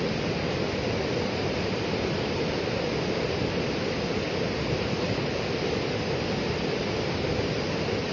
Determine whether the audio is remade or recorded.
remade